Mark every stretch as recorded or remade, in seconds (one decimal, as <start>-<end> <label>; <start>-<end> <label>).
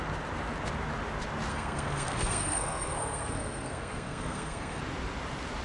0.0-1.5 recorded; 1.5-4.8 remade; 4.8-5.6 recorded